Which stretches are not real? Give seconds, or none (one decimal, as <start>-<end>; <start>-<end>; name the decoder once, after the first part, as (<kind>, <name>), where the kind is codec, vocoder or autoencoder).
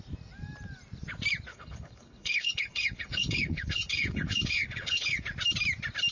1.5-5.2 (codec, HILCodec)